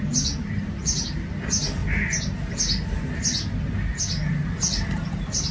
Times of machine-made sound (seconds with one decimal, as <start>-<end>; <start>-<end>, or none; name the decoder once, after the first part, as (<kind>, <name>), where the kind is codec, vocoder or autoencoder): none